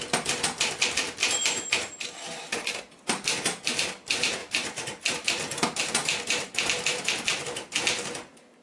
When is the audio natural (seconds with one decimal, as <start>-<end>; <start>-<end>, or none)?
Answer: none

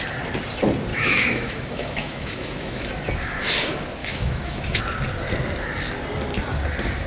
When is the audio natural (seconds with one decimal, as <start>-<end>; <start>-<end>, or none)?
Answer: 0.0-0.9; 2.9-4.0; 4.8-7.1